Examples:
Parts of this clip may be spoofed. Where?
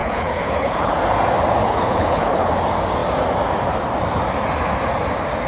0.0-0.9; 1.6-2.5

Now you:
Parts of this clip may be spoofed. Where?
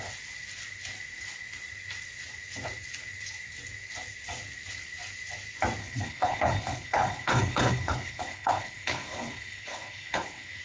5.8-10.6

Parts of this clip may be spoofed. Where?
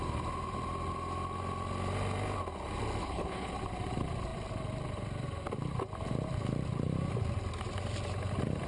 3.0-3.5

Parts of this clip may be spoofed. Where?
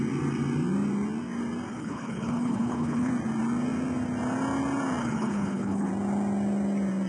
1.7-3.1; 5.0-5.9